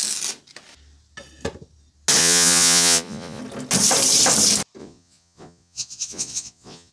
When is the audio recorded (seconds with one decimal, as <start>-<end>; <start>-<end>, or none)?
0.0-2.2; 3.4-4.8